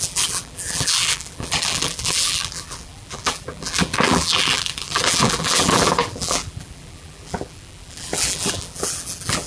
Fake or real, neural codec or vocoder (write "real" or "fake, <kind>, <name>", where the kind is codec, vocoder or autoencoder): fake, vocoder, BigVGAN v2